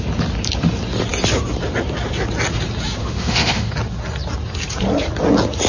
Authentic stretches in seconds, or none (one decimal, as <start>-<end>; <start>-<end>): 0.0-3.0; 3.7-5.7